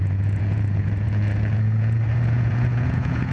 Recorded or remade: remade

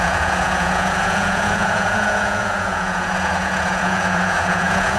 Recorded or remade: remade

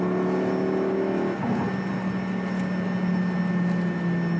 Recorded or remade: recorded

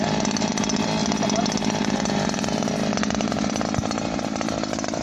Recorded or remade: recorded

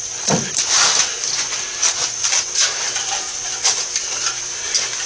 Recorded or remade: recorded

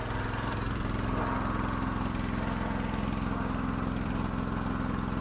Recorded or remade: recorded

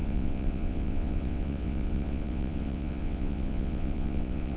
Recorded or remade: remade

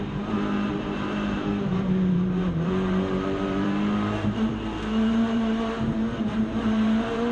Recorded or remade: remade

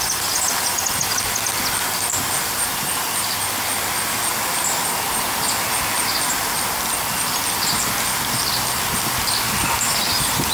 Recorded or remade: recorded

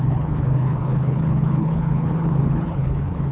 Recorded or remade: remade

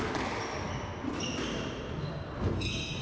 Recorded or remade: recorded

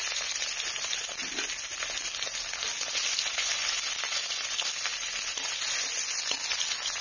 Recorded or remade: recorded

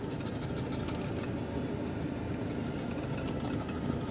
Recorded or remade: recorded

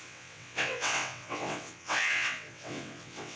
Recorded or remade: remade